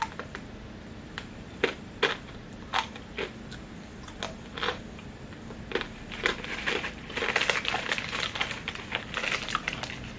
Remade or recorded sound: recorded